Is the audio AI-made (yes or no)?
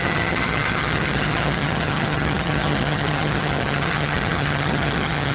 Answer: yes